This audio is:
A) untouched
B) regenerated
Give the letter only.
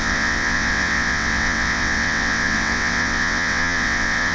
B